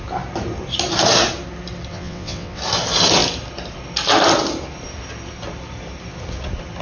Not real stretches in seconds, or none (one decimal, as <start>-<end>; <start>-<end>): 1.9-2.6

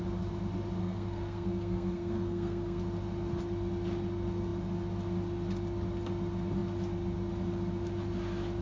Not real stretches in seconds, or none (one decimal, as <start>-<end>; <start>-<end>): 0.8-2.8

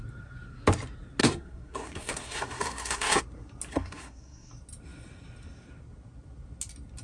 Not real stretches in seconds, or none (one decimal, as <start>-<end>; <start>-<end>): 1.2-3.2; 3.7-4.5

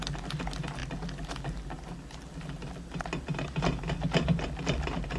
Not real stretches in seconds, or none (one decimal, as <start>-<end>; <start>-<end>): none